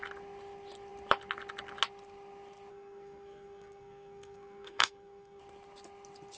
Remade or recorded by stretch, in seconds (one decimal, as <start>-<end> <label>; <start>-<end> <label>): 0.0-2.7 recorded; 2.7-5.4 remade; 5.4-6.4 recorded